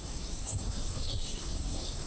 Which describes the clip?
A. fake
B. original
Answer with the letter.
A